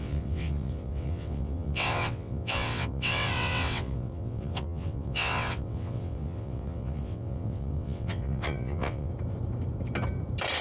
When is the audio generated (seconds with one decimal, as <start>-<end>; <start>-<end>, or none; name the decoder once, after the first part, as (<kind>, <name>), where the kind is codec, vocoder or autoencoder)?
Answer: 0.0-9.1 (vocoder, WaveNeXt)